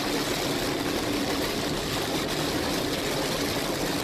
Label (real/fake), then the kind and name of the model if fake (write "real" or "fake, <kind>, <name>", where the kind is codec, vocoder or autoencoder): real